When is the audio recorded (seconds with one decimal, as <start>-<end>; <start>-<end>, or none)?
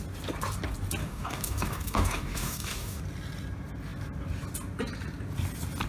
0.0-1.0; 3.0-5.9